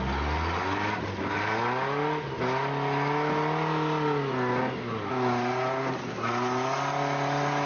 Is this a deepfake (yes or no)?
no